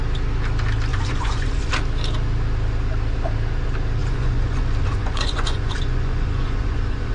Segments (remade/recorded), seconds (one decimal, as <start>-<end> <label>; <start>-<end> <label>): 0.0-0.9 recorded; 0.9-1.7 remade; 1.7-4.0 recorded; 4.0-7.1 remade